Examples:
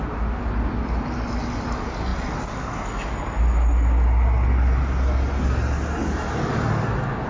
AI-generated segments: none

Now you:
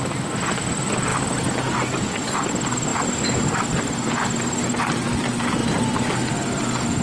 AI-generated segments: 5.6-6.1 (vocoder, BigVGAN v2)

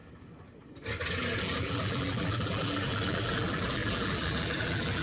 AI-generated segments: 1.4-5.0 (vocoder, BigVGAN v2)

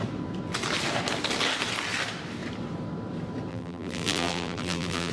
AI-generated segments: 3.5-5.1 (vocoder, BigVGAN v2)